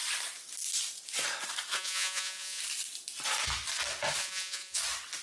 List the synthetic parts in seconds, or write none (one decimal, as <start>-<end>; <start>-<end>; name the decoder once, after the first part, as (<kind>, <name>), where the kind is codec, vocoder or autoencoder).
1.7-2.6 (vocoder, Vocos); 4.2-4.8